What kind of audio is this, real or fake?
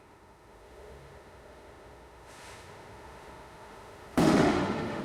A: fake